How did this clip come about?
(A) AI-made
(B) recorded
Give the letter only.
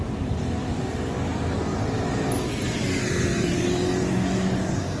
B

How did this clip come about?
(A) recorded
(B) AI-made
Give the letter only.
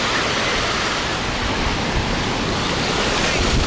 A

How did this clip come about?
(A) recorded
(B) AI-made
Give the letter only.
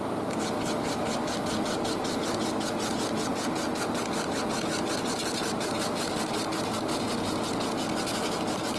A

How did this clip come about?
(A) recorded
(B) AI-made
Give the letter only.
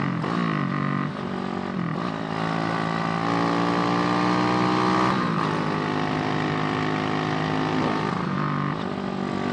A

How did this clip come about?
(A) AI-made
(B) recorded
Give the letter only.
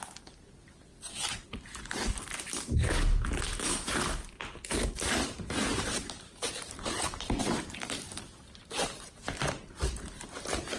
B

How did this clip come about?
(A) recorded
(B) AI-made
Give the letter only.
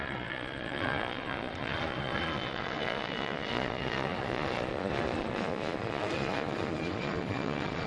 B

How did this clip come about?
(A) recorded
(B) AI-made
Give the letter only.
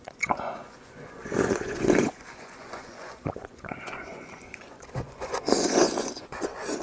B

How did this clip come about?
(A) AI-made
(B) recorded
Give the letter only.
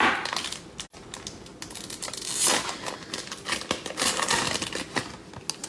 B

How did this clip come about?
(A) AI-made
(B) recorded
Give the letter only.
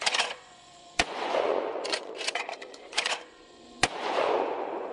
A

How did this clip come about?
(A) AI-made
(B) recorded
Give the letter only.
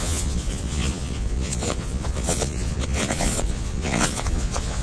A